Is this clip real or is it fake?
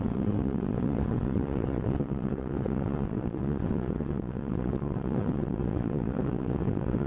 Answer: fake